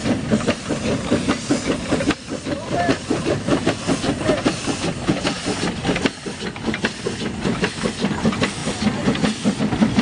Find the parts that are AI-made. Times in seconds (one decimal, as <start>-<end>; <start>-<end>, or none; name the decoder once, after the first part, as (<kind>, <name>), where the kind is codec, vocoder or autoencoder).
0.0-3.6 (vocoder, BigVGAN v2)